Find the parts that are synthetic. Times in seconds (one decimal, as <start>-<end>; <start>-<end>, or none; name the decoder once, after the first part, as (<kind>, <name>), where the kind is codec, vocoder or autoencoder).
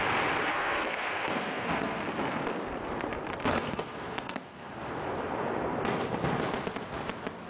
0.5-2.0 (codec, SNAC); 3.5-4.8